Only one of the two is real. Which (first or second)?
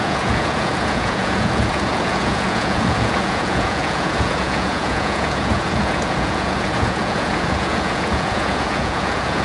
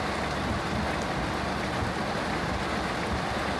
second